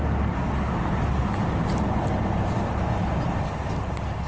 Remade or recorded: recorded